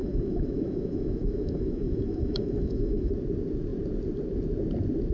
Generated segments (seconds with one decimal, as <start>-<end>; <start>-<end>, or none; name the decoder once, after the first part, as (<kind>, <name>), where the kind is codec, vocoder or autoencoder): 0.0-3.1 (autoencoder, DAC-VAE)